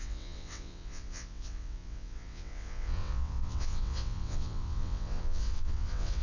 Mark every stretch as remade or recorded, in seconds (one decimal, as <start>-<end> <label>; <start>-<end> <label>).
0.0-6.2 remade